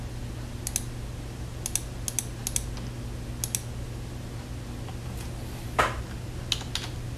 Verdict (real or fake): real